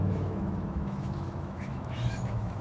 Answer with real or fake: fake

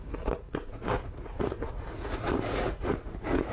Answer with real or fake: fake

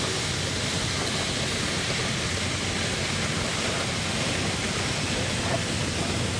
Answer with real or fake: real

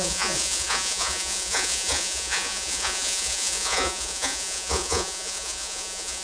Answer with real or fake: fake